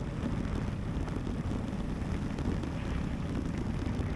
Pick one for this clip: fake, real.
real